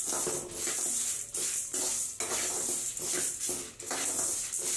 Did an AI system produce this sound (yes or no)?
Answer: no